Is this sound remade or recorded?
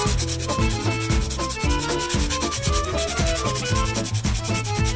recorded